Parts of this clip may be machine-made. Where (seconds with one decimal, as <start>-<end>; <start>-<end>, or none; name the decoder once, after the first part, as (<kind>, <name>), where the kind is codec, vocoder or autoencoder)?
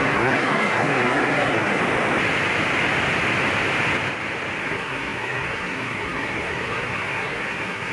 0.0-1.8 (codec, SNAC); 4.6-7.9